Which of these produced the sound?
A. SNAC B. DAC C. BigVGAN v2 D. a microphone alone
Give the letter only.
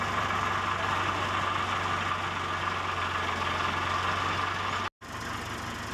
D